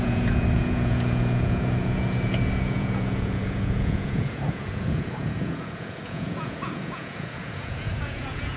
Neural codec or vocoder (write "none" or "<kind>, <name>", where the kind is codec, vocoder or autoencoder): vocoder, Vocos